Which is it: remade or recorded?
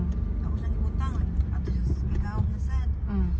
recorded